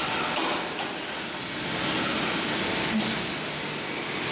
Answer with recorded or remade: recorded